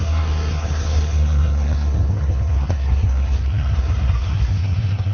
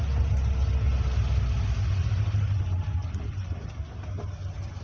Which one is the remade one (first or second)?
first